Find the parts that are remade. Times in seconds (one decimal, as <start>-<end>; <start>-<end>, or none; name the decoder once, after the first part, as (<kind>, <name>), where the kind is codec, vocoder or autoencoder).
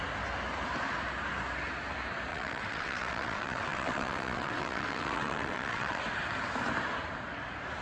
2.3-6.0 (vocoder, WaveNeXt)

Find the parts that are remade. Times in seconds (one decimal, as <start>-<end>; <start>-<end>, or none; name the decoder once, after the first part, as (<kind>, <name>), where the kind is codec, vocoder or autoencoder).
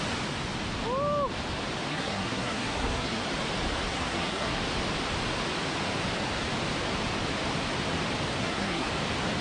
1.9-3.2 (codec, SNAC); 3.9-4.6; 8.4-8.9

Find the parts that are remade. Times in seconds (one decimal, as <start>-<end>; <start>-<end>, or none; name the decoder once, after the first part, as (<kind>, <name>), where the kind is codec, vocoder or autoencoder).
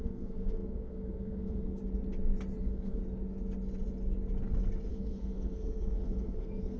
0.0-1.8 (codec, SNAC); 2.6-3.0; 4.9-6.8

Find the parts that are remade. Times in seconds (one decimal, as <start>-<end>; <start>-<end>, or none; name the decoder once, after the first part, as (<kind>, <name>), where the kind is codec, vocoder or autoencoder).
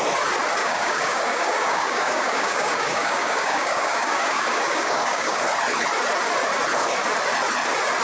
0.6-5.4 (codec, DAC)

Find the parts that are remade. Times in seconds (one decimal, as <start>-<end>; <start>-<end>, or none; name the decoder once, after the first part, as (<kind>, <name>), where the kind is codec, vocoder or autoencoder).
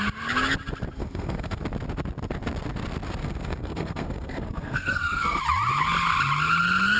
1.0-1.6 (codec, SNAC); 3.2-5.4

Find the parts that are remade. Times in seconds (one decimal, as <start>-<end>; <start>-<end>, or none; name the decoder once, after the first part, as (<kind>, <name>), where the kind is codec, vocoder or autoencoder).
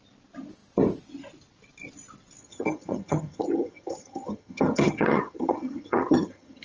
2.4-6.6 (vocoder, HiFi-GAN)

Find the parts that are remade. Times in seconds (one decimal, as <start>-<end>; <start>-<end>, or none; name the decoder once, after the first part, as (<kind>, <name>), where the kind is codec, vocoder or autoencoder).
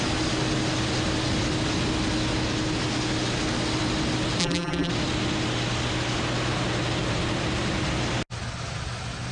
4.4-4.9 (vocoder, BigVGAN v2)